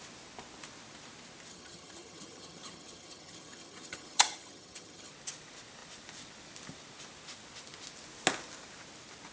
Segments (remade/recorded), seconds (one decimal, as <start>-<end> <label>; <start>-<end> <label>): 0.0-1.5 recorded; 1.5-5.1 remade; 5.1-9.3 recorded